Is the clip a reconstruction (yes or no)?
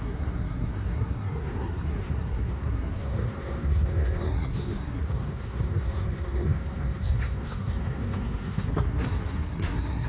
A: yes